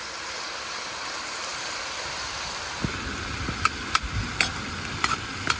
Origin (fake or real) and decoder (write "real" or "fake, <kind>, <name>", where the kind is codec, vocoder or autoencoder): real